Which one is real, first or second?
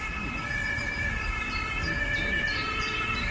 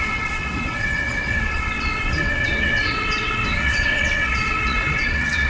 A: first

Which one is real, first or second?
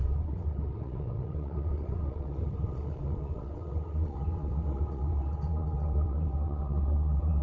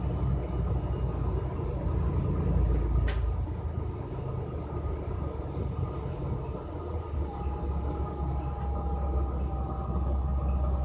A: second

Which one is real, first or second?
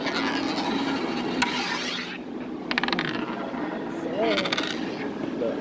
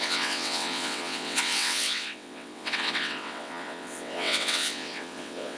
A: first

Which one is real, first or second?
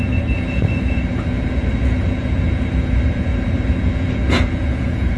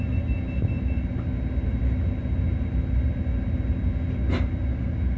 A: second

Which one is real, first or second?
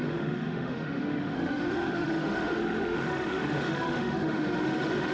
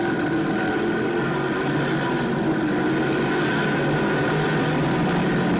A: second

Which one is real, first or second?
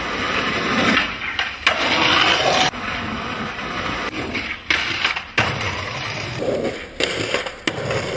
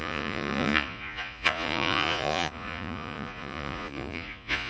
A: first